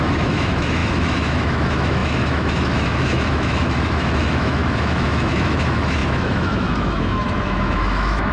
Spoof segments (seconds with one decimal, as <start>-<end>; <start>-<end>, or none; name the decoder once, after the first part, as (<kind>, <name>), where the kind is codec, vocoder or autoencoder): 0.0-8.3 (autoencoder, DAC-VAE)